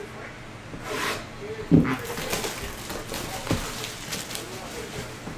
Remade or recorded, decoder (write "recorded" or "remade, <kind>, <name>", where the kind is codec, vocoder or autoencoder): recorded